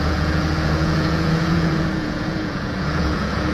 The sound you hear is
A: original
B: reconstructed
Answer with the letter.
B